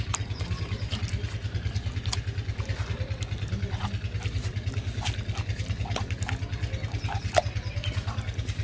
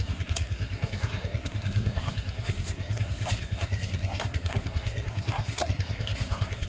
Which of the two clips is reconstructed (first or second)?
second